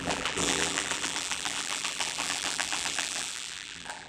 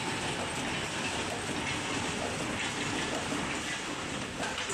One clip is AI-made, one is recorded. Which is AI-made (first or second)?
first